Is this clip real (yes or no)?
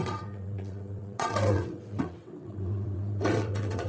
no